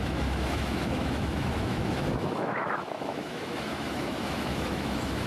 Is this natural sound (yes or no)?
no